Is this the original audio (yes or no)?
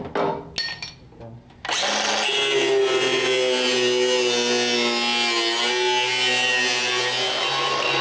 yes